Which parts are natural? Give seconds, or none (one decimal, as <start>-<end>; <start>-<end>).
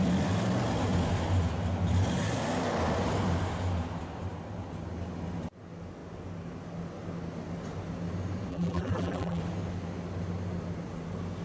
0.0-8.5; 9.4-11.4